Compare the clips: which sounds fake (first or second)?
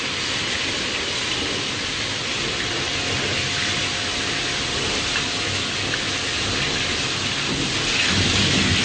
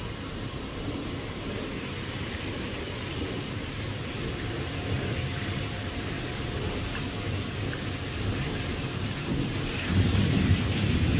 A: second